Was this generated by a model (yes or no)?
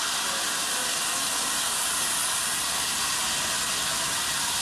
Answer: no